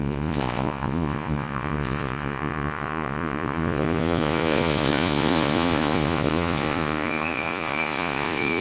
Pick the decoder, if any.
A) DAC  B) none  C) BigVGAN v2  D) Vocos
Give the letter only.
D